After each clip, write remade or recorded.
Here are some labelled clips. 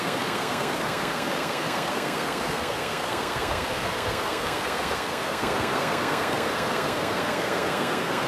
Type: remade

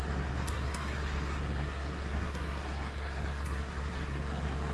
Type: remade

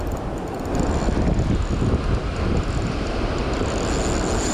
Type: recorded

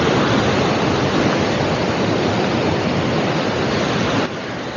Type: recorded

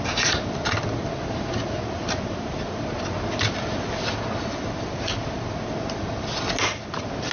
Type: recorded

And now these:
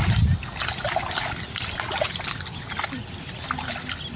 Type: recorded